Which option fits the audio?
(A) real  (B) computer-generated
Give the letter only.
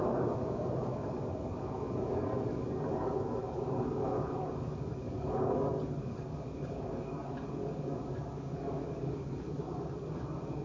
B